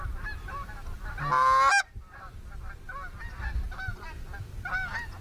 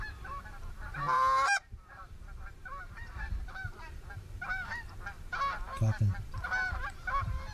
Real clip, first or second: first